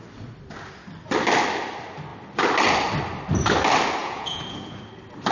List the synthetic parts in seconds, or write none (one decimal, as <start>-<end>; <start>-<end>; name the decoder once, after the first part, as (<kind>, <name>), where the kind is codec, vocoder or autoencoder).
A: 4.0-4.8 (vocoder, Vocos)

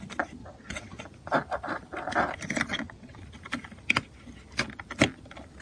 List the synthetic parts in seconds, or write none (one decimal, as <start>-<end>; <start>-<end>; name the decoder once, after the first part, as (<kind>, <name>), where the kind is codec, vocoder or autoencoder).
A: 0.4-1.0 (vocoder, WaveNeXt); 2.7-3.2

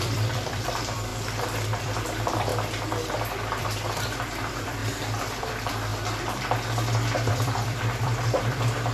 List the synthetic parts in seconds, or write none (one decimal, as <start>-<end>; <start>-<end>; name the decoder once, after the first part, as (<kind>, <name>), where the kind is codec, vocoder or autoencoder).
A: 0.0-1.1 (vocoder, BigVGAN v2); 1.8-2.5; 3.6-4.8; 5.4-5.9; 7.3-8.9

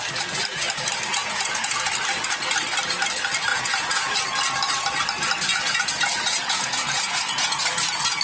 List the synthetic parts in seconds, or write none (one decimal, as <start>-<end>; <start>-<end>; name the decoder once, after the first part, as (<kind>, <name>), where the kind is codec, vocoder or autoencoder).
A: 1.2-1.9 (vocoder, Vocos); 3.5-4.1; 5.5-7.6

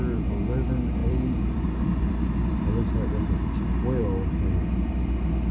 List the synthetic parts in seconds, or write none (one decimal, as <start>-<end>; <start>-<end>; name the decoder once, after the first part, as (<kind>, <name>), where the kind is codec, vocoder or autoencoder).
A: 1.0-2.7 (vocoder, BigVGAN v2); 4.0-4.6